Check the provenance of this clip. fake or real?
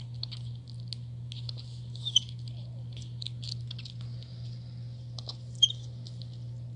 real